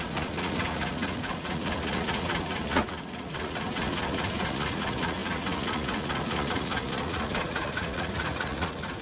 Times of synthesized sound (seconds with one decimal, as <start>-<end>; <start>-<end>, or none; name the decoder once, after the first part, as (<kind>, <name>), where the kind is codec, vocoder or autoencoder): 0.0-9.0 (vocoder, Vocos)